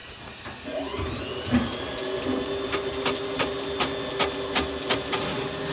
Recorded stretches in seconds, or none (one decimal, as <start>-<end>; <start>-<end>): 0.0-5.7